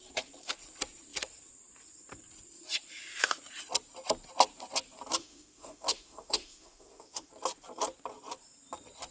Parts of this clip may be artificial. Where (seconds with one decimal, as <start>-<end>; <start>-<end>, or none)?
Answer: 5.2-7.3